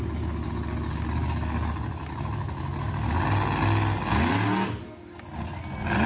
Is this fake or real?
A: real